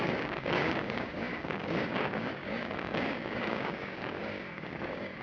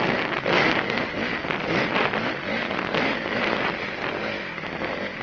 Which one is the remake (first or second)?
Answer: first